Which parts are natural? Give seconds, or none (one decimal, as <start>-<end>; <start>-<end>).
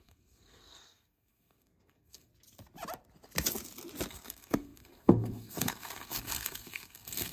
2.3-4.1